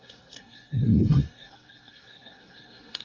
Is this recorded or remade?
remade